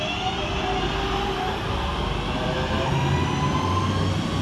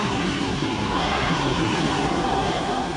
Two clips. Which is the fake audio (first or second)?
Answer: second